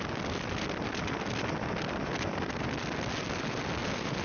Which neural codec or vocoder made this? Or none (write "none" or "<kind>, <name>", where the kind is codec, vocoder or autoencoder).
none